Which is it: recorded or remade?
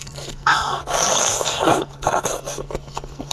remade